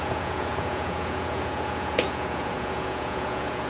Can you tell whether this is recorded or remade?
remade